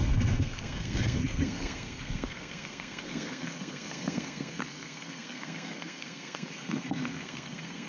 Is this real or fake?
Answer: fake